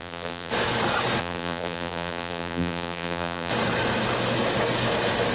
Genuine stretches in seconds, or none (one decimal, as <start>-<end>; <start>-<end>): 0.5-1.2; 3.5-5.3